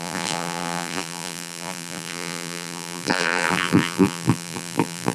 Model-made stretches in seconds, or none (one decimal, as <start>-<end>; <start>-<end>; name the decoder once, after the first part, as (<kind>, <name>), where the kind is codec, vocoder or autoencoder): 0.0-5.1 (vocoder, BigVGAN v2)